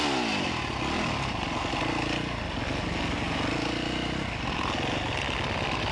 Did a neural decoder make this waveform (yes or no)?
no